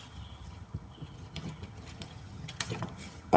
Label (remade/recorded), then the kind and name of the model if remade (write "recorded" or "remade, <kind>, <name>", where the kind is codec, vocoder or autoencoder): remade, vocoder, HiFi-GAN